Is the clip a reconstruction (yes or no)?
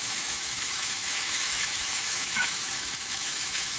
yes